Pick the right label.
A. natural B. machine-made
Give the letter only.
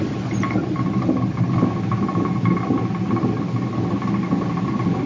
A